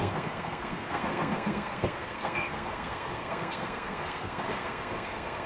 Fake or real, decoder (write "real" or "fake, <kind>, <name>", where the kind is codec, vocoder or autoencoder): fake, codec, SNAC